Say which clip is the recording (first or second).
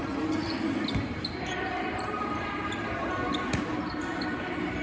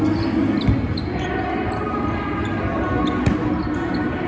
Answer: second